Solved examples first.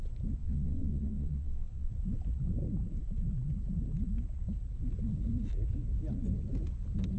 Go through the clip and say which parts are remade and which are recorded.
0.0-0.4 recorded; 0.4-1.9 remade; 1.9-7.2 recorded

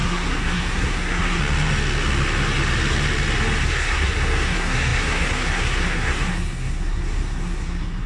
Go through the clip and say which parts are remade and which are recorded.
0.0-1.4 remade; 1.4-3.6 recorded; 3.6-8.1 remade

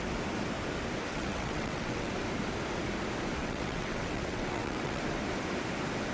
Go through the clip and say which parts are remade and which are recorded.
0.0-1.1 recorded; 1.1-2.1 remade; 2.1-3.4 recorded; 3.4-5.0 remade; 5.0-6.1 recorded

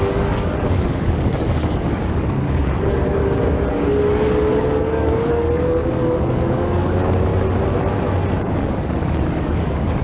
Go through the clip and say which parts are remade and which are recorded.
0.0-3.2 remade; 3.2-3.7 recorded; 3.7-7.3 remade; 7.3-8.4 recorded; 8.4-10.0 remade

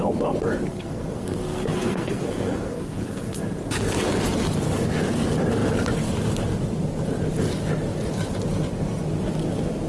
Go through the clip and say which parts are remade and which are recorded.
0.0-0.7 recorded; 0.7-3.4 remade; 3.4-9.9 recorded

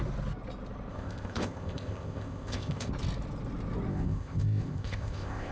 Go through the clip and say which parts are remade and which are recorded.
0.0-0.9 recorded; 0.9-2.9 remade; 2.9-3.9 recorded; 3.9-5.5 remade